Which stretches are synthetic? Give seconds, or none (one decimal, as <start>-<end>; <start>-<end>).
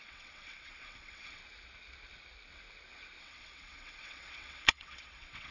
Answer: 0.0-1.4; 3.2-5.5